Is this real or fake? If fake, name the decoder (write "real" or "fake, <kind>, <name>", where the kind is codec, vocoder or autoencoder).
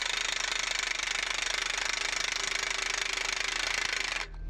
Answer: real